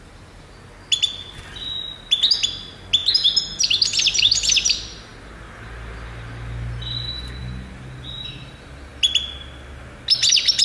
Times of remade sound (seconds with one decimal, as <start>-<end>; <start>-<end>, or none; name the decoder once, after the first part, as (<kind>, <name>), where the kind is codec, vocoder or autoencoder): none